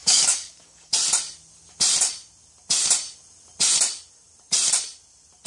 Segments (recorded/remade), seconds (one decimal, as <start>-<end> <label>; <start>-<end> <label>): 0.0-0.9 remade; 0.9-5.5 recorded